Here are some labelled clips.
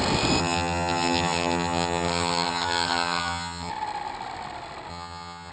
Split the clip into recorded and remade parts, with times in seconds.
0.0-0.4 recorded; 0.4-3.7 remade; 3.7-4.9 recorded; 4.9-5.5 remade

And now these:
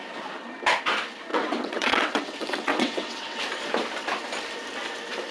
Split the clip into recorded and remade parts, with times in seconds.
0.0-1.3 recorded; 1.3-3.4 remade; 3.4-5.3 recorded